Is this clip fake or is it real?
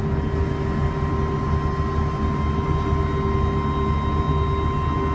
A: real